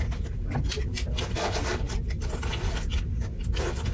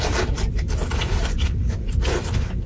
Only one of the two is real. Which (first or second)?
first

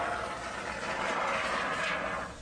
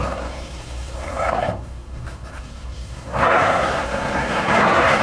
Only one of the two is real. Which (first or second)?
first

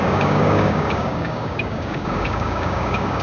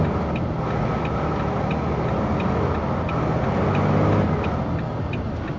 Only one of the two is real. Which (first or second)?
second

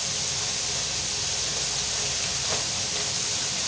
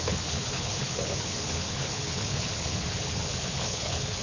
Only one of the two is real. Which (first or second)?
first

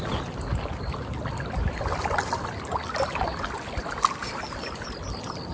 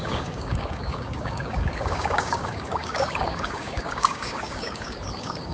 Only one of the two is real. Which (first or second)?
first